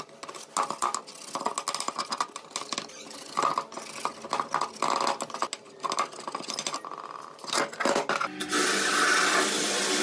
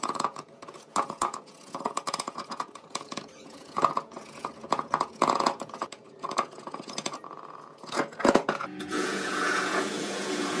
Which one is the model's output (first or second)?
second